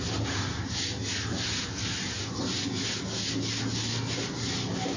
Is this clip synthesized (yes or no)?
no